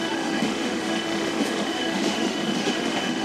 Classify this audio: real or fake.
fake